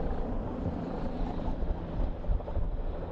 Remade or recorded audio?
remade